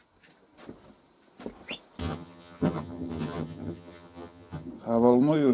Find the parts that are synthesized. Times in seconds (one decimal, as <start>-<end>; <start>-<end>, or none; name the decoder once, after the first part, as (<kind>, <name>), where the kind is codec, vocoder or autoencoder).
2.0-4.7 (vocoder, HiFi-GAN)